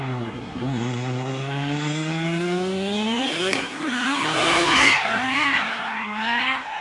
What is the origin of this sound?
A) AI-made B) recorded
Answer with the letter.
A